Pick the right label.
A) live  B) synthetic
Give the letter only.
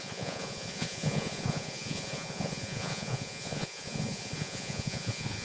B